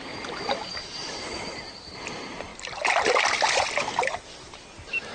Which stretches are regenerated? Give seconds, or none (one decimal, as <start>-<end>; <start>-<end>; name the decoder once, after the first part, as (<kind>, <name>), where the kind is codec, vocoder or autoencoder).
0.0-1.2 (vocoder, BigVGAN v2); 1.7-2.5; 3.9-5.1